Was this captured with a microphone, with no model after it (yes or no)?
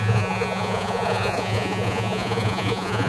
no